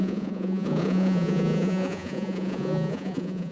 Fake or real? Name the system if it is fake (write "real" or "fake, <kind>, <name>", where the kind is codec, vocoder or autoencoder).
fake, vocoder, Vocos